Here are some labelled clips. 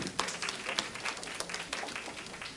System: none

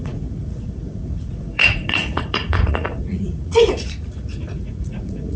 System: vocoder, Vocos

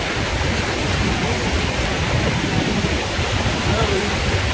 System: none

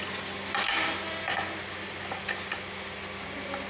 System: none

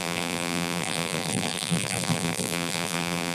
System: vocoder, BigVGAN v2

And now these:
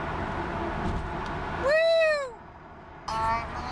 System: none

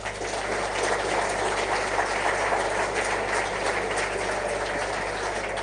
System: none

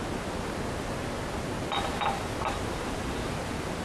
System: none